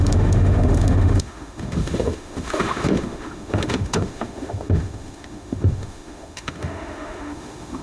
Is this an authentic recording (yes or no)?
no